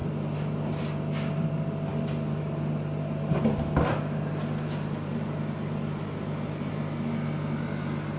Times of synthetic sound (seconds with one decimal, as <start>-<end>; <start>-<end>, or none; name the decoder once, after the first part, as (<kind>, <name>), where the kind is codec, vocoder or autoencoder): 0.0-0.7 (vocoder, BigVGAN v2); 1.9-6.7